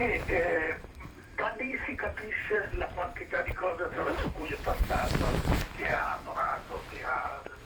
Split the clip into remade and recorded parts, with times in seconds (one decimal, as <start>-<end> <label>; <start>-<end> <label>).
0.0-7.7 remade